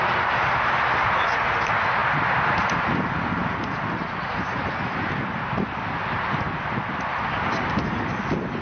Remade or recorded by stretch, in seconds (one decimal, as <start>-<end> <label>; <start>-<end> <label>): 0.0-8.6 recorded